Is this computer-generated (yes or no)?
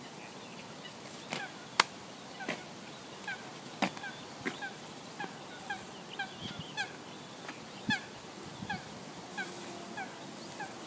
no